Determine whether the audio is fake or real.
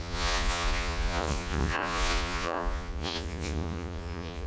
fake